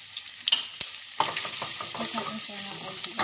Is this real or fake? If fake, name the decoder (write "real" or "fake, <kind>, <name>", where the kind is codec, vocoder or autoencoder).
real